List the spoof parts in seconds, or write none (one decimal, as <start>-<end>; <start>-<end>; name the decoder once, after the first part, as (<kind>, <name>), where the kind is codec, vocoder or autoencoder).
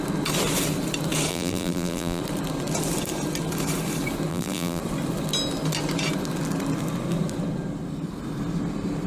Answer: 1.3-2.2 (vocoder, BigVGAN v2); 4.3-4.8